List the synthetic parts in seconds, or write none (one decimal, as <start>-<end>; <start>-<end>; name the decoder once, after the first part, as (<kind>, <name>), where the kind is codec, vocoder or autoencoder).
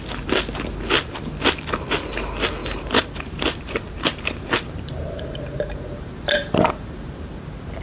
2.6-7.3 (vocoder, BigVGAN v2)